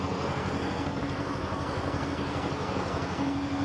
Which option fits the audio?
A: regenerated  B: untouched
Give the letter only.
A